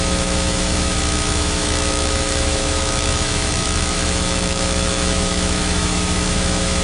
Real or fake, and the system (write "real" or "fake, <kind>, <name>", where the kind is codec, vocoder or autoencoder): fake, autoencoder, DAC-VAE